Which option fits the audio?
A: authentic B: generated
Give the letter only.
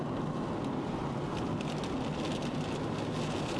A